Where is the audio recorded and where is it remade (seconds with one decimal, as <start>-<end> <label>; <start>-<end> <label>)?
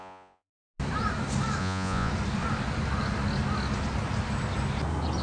0.0-0.5 remade; 0.5-1.6 recorded; 1.6-2.1 remade; 2.1-5.2 recorded